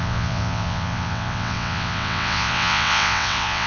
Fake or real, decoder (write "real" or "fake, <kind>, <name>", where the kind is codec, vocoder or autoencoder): fake, vocoder, WaveNeXt